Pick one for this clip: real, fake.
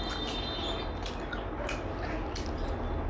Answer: real